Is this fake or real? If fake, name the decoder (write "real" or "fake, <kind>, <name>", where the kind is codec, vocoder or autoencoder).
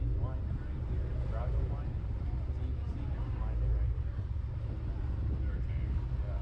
real